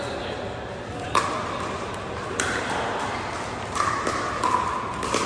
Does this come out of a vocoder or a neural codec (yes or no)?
no